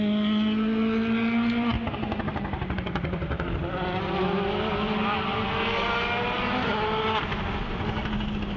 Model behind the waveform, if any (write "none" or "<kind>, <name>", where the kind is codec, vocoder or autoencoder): none